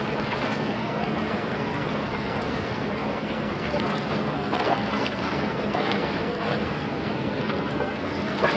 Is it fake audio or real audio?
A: fake